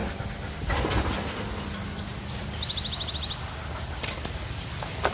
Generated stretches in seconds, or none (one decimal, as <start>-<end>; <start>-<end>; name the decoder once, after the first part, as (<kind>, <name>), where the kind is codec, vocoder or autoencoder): none